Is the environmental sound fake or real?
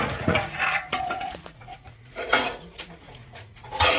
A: fake